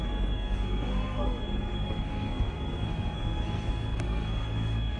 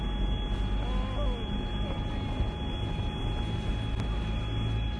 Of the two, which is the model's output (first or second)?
first